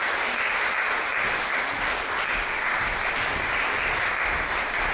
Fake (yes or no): no